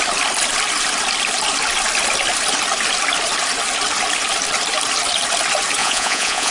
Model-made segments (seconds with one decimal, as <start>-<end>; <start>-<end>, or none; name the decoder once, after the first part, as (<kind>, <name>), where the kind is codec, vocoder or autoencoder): 5.8-6.5 (vocoder, Vocos)